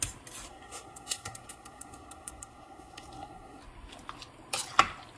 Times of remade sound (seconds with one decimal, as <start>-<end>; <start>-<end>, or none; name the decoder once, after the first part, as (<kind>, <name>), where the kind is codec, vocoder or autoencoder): 0.5-3.6 (codec, SNAC)